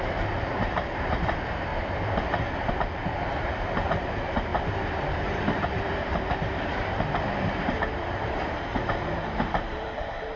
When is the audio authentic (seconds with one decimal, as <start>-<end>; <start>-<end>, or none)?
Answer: 1.7-2.7; 4.5-5.0